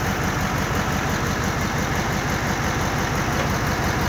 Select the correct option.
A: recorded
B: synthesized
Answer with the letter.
A